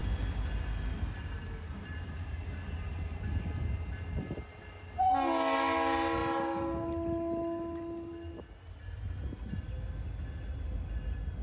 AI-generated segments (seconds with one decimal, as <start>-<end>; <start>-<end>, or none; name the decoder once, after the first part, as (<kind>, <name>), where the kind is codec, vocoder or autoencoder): none